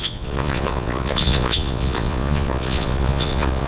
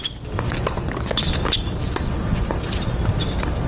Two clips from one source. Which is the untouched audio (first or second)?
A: second